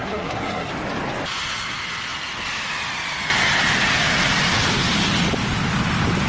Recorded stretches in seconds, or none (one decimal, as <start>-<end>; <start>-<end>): 0.7-6.3